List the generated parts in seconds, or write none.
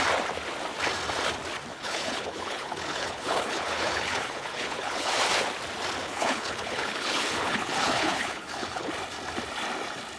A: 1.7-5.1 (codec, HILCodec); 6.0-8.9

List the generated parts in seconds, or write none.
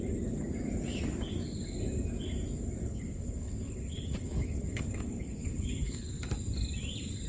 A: 2.8-6.1 (codec, HILCodec)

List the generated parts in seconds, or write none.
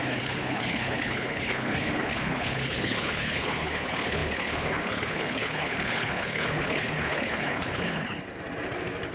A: 0.0-8.2 (codec, HILCodec)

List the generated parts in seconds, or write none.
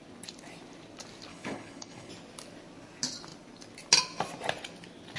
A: 1.3-2.1 (codec, HILCodec)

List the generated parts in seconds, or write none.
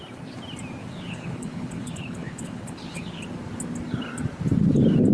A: 0.8-3.2 (codec, HILCodec)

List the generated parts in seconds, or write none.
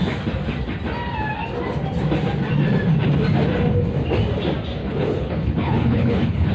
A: 4.8-6.5 (codec, HILCodec)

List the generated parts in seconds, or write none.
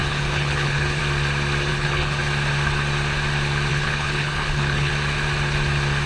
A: 0.0-1.0 (codec, HILCodec); 1.7-2.2; 3.7-4.9